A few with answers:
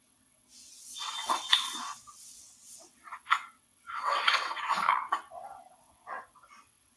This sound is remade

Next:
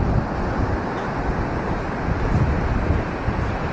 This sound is recorded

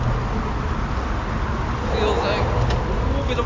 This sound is recorded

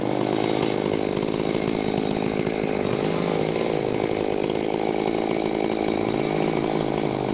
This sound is recorded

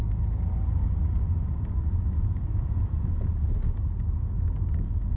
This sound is recorded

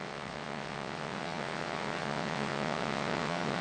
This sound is remade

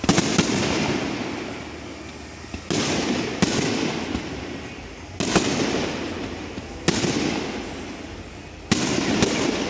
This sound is recorded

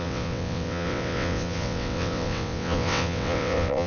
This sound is remade